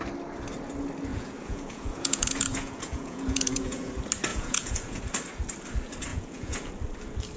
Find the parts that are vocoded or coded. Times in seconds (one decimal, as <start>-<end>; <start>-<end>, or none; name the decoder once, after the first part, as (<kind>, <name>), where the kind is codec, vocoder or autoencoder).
1.1-3.9 (vocoder, Vocos); 4.3-5.0; 6.1-6.7